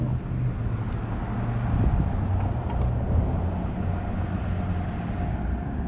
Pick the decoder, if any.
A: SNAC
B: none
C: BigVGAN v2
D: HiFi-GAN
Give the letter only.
B